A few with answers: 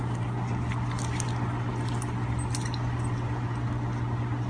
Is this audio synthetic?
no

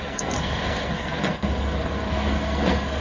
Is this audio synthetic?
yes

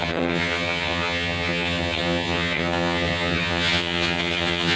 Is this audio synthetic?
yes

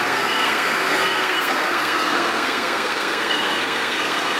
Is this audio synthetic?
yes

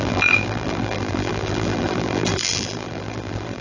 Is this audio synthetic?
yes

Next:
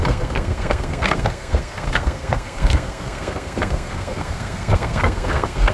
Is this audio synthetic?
yes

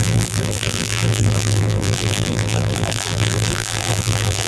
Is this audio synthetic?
yes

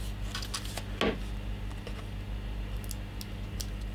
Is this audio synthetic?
no